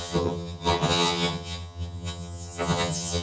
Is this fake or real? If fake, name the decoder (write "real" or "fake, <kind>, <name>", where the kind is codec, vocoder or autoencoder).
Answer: fake, vocoder, HiFi-GAN